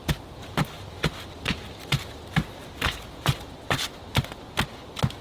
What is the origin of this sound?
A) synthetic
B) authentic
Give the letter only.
B